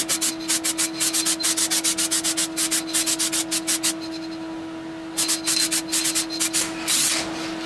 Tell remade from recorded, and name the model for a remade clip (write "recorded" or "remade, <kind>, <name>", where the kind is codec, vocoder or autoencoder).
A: recorded